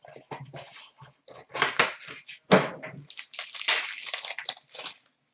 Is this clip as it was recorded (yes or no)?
yes